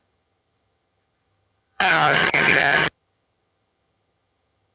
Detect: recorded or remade remade